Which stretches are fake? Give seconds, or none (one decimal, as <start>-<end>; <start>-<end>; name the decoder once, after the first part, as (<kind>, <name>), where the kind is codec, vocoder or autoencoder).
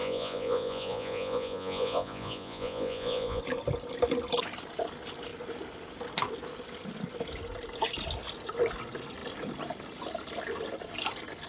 0.0-3.4 (vocoder, Vocos)